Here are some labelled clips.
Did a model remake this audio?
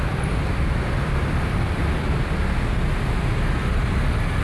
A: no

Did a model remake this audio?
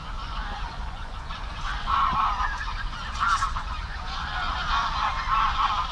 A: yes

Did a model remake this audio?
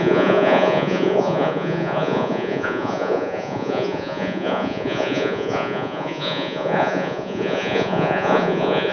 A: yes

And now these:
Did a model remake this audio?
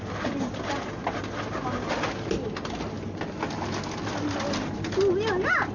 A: no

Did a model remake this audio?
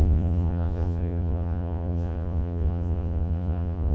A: yes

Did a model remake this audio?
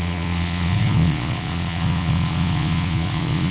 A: yes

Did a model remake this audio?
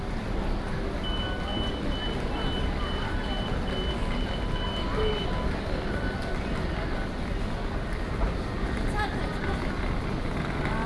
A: no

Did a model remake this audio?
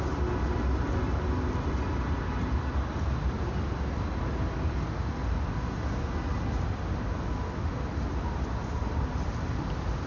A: no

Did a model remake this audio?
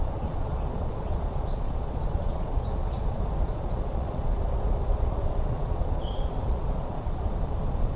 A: yes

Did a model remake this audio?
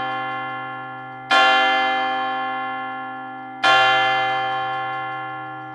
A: no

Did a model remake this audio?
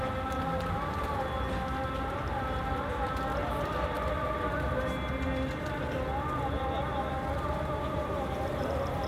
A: no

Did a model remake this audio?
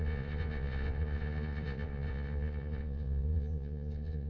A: yes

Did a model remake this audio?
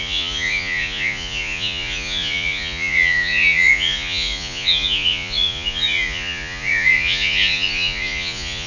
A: yes